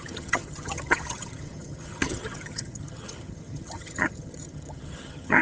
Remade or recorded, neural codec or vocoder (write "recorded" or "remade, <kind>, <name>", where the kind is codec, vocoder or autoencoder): remade, vocoder, HiFi-GAN